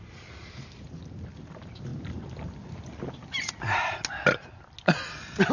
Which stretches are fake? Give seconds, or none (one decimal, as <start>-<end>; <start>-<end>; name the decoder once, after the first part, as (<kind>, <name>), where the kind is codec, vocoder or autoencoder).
none